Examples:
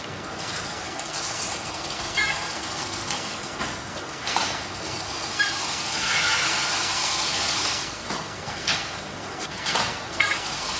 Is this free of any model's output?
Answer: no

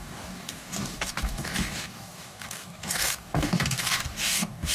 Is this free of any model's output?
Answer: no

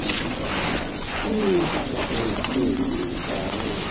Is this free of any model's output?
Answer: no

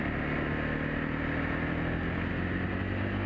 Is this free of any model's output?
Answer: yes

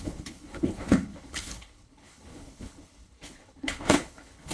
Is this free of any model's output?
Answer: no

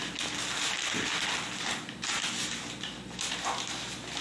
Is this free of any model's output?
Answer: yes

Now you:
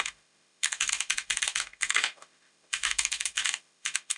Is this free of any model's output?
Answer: no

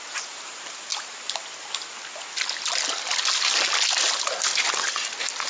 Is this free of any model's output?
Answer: yes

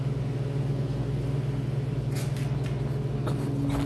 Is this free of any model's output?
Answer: yes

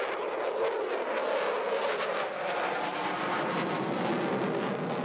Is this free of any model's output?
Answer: yes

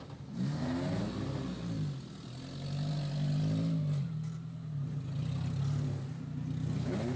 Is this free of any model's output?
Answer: yes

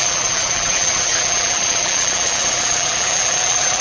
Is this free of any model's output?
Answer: no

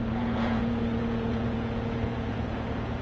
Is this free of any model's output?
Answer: no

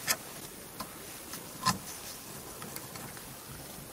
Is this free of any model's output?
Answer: yes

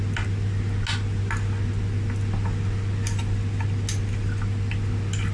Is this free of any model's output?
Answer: yes